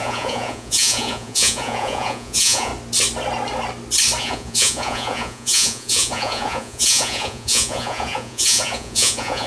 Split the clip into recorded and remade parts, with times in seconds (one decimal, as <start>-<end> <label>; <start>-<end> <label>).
0.0-2.7 remade; 2.7-4.2 recorded; 4.2-9.5 remade